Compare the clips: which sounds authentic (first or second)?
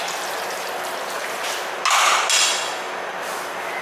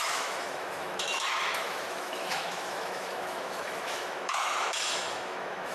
first